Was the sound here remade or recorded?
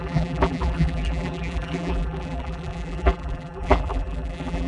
remade